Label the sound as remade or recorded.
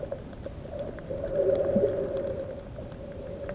recorded